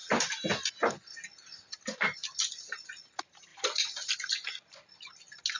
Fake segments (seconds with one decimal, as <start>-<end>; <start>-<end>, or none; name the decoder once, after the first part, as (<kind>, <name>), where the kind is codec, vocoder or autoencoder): 3.5-4.1 (vocoder, BigVGAN v2)